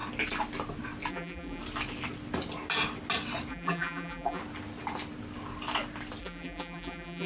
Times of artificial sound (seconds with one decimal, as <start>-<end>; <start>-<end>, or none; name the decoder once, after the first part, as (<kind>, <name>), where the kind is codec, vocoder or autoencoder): 1.1-1.6 (vocoder, BigVGAN v2); 3.5-4.4; 6.2-7.3